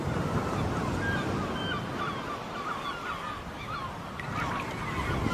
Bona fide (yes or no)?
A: yes